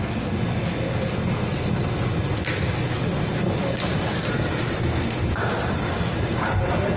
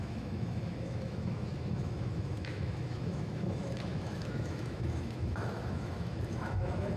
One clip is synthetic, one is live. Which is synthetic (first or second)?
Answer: second